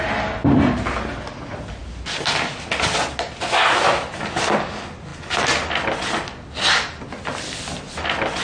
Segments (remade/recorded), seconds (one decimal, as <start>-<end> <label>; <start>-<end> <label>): 0.0-8.4 recorded